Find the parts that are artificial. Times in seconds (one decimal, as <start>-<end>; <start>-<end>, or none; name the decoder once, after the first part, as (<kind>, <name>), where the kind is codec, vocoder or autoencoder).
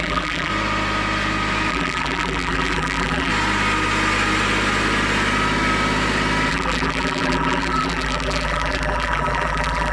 0.0-0.5 (vocoder, BigVGAN v2); 1.7-3.3; 6.5-9.9